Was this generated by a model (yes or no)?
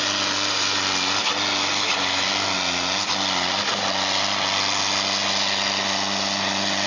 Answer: no